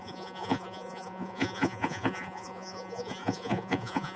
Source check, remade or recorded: remade